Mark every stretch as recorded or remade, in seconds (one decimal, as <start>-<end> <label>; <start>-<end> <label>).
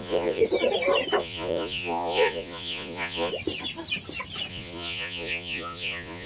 0.0-0.4 remade; 0.4-1.2 recorded; 1.2-3.3 remade; 3.3-4.5 recorded; 4.5-6.3 remade